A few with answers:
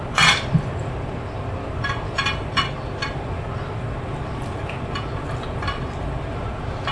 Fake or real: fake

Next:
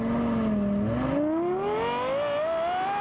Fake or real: real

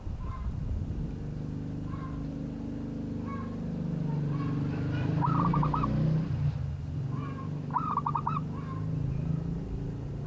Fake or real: real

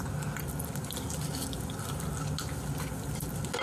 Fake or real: real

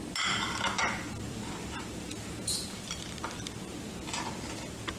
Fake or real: real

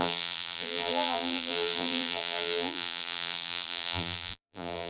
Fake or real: fake